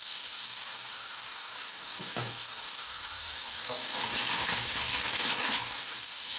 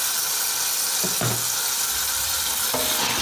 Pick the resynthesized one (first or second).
first